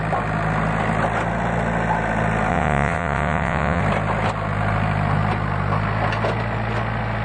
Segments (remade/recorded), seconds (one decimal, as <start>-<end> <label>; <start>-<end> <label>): 0.0-2.5 recorded; 2.5-3.8 remade; 3.8-7.2 recorded